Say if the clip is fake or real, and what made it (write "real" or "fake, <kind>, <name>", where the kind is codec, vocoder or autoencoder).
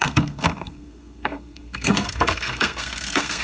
fake, codec, SNAC